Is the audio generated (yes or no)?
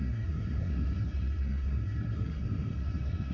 yes